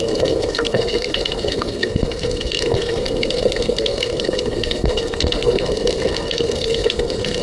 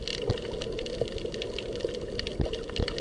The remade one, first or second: first